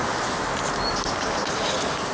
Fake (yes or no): no